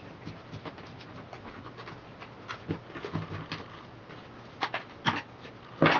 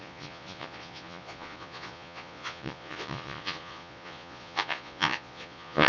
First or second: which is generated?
second